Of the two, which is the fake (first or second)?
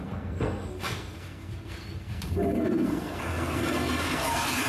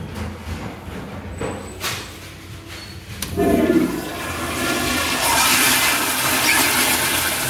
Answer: first